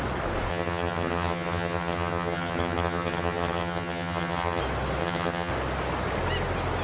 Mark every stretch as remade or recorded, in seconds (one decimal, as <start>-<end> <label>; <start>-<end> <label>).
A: 0.0-0.5 recorded; 0.5-4.6 remade; 4.6-5.0 recorded; 5.0-5.5 remade; 5.5-6.8 recorded